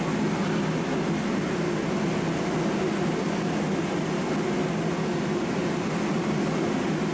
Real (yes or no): yes